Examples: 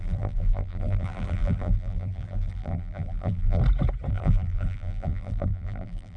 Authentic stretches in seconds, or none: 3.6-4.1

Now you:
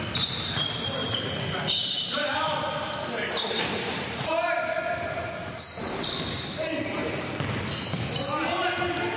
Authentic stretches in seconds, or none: 0.0-1.0; 6.2-9.2

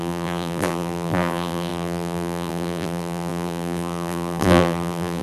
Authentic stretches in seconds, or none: none

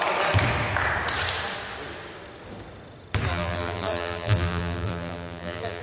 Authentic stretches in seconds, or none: 0.0-3.3

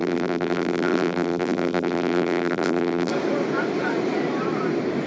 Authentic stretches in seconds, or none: 3.1-5.1